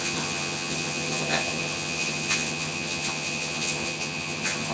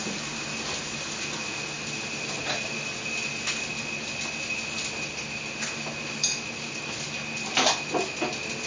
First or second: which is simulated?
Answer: first